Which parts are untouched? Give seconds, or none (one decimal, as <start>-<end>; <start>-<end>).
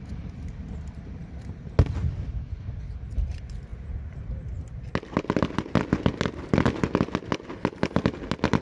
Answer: 0.0-8.6